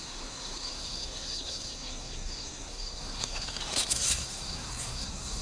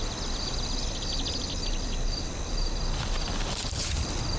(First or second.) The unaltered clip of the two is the second